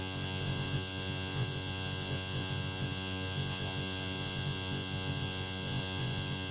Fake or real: fake